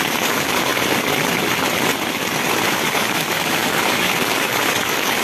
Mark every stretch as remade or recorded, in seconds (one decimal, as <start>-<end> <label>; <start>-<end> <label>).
0.0-0.7 remade; 0.7-2.7 recorded; 2.7-5.2 remade